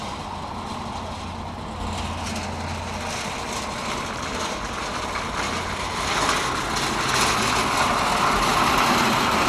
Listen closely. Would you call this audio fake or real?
real